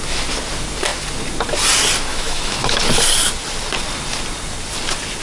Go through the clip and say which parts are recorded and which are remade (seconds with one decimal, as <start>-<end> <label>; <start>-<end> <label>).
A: 0.0-2.1 recorded; 2.1-2.8 remade; 2.8-5.2 recorded